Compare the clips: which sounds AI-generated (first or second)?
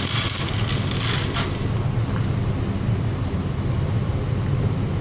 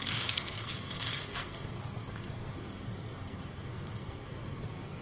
second